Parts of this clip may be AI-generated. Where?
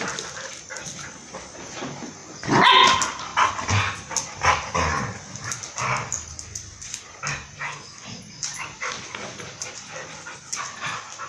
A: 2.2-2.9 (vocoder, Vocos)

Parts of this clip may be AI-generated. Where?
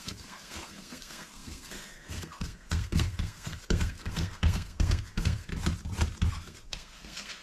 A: 0.0-5.5 (codec, SNAC); 6.3-7.4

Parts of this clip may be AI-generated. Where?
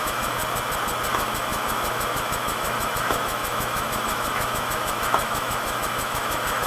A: 0.0-0.4 (autoencoder, DAC-VAE); 1.1-6.7